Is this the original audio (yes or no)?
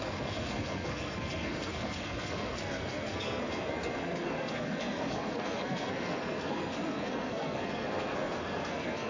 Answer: no